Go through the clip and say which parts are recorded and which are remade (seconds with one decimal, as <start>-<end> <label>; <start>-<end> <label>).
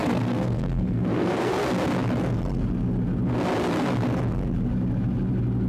0.0-1.5 remade; 1.5-5.7 recorded